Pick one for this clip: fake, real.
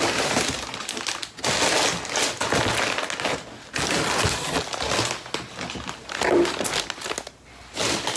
real